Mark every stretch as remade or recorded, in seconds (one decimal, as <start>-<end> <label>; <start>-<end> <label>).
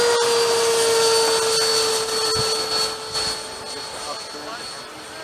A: 0.0-5.2 recorded